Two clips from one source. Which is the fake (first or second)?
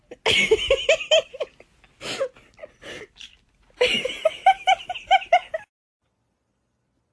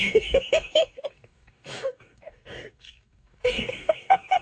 second